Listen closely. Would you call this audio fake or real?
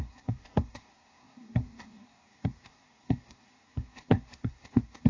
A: fake